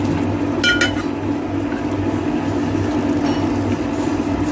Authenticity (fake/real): real